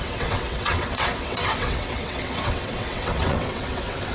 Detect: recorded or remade remade